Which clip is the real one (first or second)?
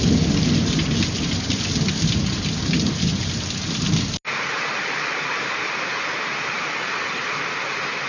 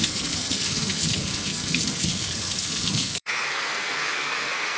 first